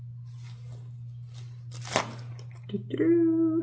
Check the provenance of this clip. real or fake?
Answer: real